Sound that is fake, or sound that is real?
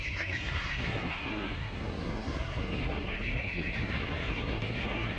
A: fake